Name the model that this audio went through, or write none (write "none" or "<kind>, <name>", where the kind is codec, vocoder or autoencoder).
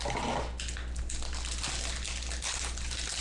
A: none